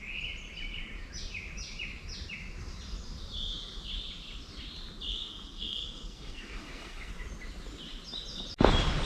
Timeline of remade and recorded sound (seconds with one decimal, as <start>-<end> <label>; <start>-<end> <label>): 0.0-5.1 recorded; 5.1-7.1 remade; 7.1-9.1 recorded